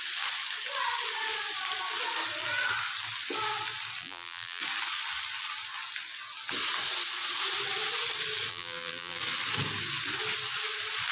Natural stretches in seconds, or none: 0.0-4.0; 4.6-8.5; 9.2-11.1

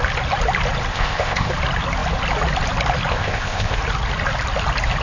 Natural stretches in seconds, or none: 0.0-0.9; 1.5-3.1; 3.8-5.0